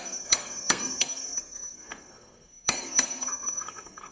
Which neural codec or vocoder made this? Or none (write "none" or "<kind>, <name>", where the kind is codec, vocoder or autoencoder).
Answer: codec, SNAC